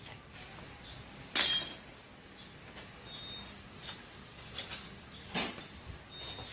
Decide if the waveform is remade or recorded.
recorded